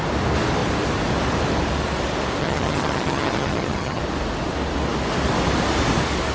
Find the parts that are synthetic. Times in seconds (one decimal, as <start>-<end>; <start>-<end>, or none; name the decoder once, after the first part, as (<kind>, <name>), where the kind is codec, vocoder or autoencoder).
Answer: 2.4-4.0 (vocoder, HiFi-GAN)